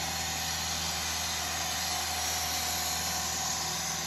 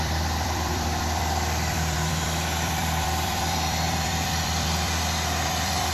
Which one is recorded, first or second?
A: first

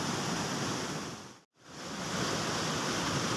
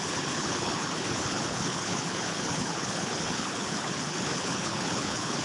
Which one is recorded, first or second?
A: first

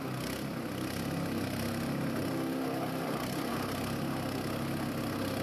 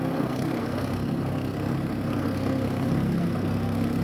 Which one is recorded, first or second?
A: first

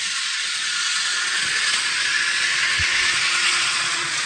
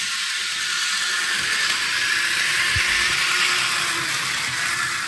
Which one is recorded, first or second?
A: second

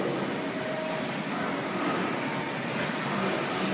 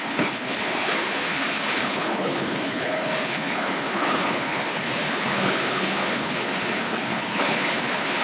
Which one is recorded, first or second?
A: first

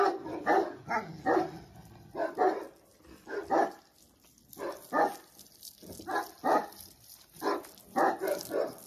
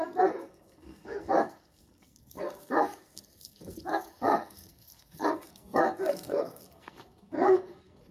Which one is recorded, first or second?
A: first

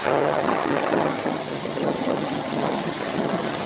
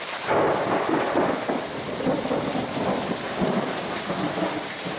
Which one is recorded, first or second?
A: second